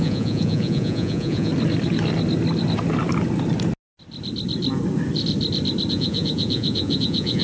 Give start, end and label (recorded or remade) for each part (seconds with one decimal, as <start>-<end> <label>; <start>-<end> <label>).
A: 0.0-1.5 remade; 1.5-5.9 recorded; 5.9-7.4 remade